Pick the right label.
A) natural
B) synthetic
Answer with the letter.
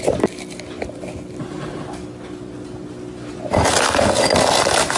A